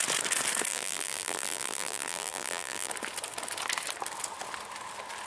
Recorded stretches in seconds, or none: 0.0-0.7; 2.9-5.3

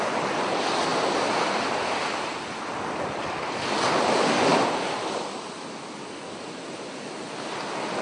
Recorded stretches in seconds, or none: 0.0-0.9; 2.2-4.5; 5.2-8.0

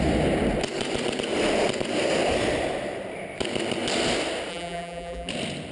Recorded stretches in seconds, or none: 0.0-4.5; 5.3-5.7

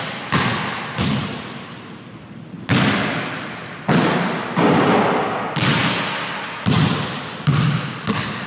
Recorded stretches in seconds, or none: 0.0-1.3; 2.0-8.5

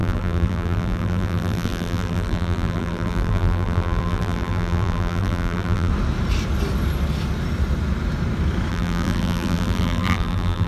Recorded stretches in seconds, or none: 5.9-8.7

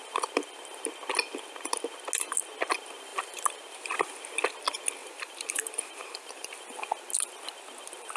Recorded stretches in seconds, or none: 0.0-5.0; 6.5-8.2

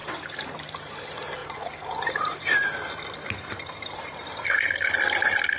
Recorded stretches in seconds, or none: 1.0-1.4; 4.8-5.6

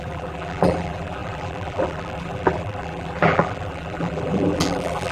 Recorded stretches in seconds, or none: none